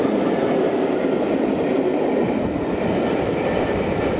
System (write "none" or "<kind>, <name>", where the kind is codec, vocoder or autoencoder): none